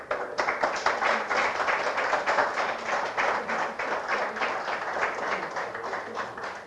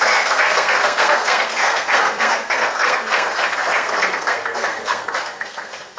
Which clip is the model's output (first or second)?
second